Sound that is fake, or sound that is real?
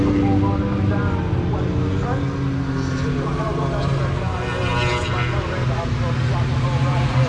real